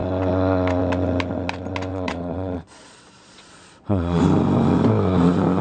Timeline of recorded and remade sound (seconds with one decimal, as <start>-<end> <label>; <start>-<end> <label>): 0.0-1.9 recorded; 1.9-4.2 remade; 4.2-5.6 recorded